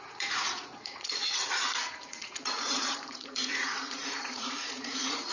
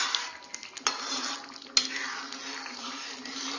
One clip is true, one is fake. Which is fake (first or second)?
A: first